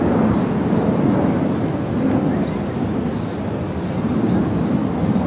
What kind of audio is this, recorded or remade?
recorded